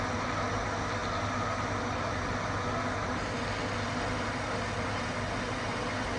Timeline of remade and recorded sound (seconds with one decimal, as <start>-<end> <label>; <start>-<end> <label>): 0.0-6.2 recorded